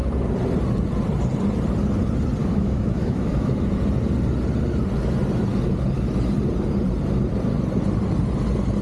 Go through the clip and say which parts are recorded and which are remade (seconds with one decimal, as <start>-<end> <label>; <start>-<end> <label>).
0.0-2.4 recorded; 2.4-3.6 remade; 3.6-8.8 recorded